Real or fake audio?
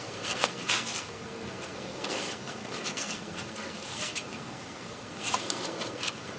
fake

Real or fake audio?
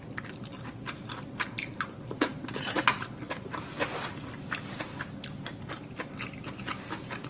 real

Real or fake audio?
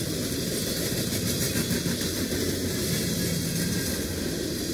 real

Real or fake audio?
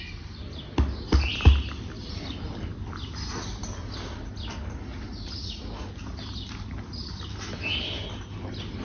real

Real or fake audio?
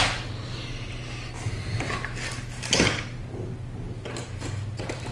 real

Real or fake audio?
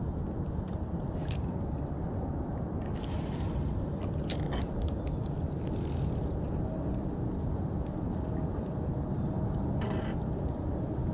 real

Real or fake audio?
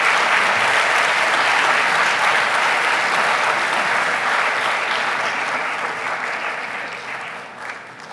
real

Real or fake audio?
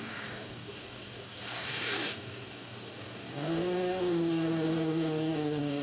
fake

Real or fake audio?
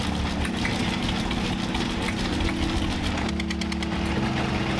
real